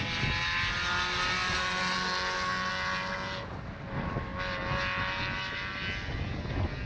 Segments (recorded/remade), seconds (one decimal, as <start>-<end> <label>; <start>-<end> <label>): 0.0-6.9 recorded